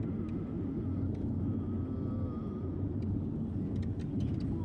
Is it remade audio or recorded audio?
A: recorded